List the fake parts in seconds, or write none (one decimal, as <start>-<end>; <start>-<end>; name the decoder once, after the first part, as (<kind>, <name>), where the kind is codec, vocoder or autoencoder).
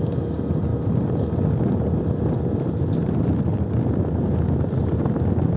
none